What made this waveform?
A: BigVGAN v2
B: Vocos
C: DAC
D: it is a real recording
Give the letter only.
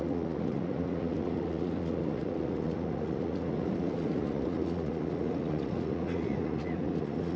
B